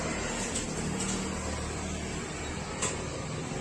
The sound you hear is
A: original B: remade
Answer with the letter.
A